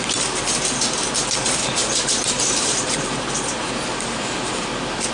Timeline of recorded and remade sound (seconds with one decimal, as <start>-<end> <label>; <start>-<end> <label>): 0.0-1.8 recorded; 1.8-4.3 remade; 4.3-5.1 recorded